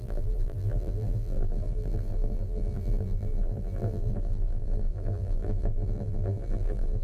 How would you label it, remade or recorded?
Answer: remade